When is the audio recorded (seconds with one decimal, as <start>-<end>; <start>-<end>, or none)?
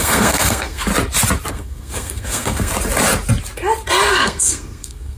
0.9-1.5; 2.7-4.1